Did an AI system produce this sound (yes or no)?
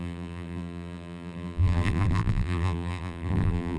yes